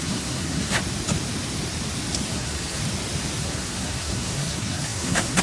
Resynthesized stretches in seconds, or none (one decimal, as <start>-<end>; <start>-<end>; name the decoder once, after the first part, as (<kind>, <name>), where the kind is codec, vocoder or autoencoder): 0.0-0.8 (codec, SNAC); 2.3-2.8; 3.4-5.4